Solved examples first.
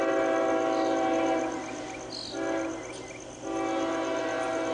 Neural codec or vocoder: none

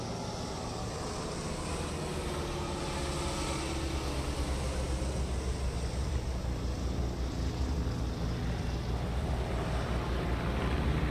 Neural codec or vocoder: none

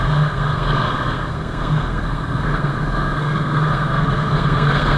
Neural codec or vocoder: codec, SNAC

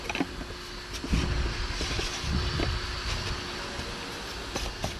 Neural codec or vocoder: none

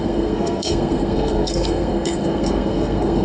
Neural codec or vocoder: codec, SNAC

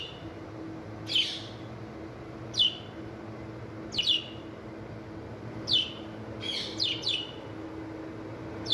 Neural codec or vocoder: none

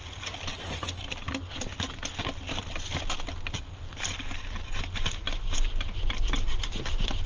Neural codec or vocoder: none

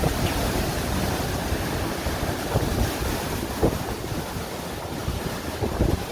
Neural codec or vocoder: none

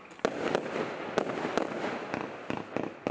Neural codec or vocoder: none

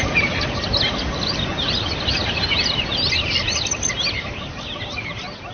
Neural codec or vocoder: none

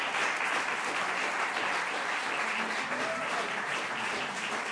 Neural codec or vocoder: none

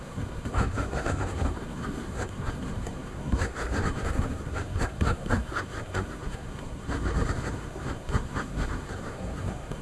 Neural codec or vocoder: codec, SNAC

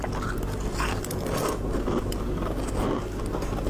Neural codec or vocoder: none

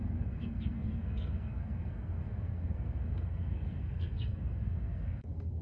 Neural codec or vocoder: codec, SNAC